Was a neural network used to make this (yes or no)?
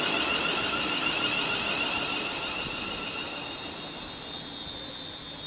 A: no